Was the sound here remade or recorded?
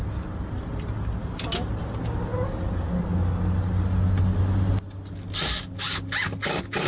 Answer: recorded